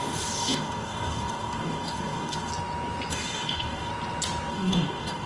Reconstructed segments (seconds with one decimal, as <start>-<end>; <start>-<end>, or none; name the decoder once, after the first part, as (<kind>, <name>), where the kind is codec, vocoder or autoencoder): 0.0-2.5 (codec, DAC); 3.1-3.9; 4.5-5.3